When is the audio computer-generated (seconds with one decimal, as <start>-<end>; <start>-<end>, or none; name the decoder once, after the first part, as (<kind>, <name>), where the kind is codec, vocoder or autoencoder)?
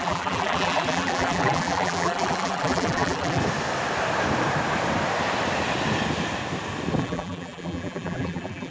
0.0-3.4 (vocoder, BigVGAN v2); 7.0-8.7